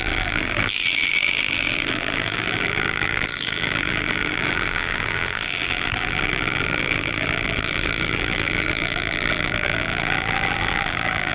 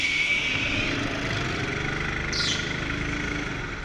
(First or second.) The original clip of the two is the second